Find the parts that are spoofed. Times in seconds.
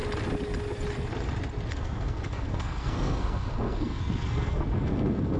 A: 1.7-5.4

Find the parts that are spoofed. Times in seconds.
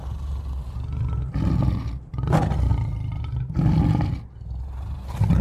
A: none